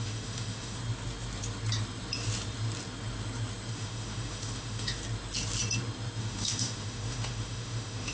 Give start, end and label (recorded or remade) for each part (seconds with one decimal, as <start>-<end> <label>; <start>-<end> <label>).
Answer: 0.0-0.8 remade; 0.8-3.7 recorded; 3.7-5.0 remade; 5.0-6.2 recorded; 6.2-8.1 remade